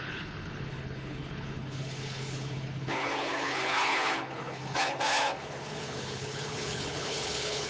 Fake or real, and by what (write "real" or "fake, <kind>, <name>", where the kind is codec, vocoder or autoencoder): fake, codec, HILCodec